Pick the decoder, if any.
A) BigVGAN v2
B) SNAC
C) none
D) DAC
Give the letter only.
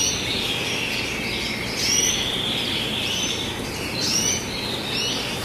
C